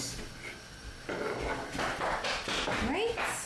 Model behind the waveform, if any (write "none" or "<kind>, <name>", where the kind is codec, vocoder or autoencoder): none